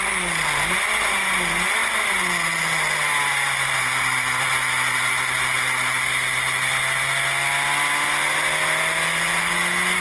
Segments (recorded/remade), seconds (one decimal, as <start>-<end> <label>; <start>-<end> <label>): 0.0-10.0 recorded